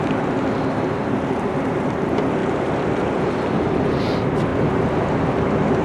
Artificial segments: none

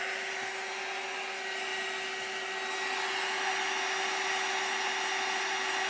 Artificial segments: none

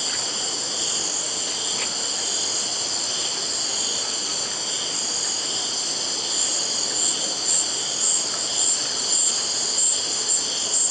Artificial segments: none

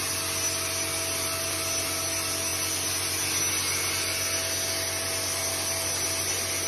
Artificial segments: none